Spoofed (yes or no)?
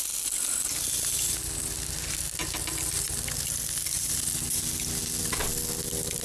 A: no